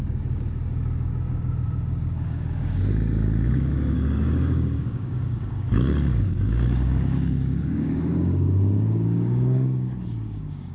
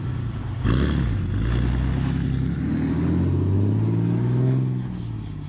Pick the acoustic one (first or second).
second